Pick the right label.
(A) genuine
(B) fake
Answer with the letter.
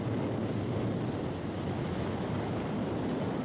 A